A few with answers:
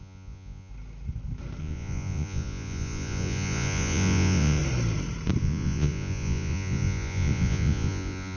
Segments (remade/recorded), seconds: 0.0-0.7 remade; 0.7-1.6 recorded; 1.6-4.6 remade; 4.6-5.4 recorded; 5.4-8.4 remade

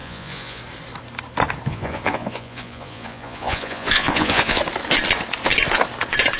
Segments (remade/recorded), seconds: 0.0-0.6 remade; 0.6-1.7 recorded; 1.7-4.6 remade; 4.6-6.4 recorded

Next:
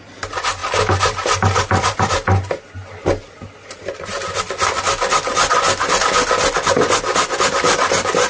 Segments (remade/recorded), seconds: 0.0-8.3 recorded

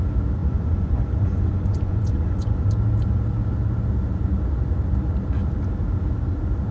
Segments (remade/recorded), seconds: 0.0-0.4 recorded; 0.4-2.7 remade; 2.7-6.7 recorded

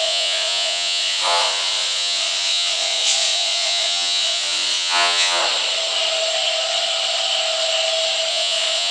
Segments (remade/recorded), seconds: 0.0-5.4 remade; 5.4-8.3 recorded; 8.3-8.9 remade

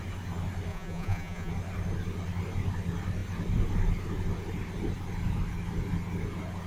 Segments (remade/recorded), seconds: 0.0-0.7 recorded; 0.7-1.5 remade; 1.5-6.7 recorded